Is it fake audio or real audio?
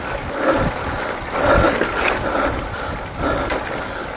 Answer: real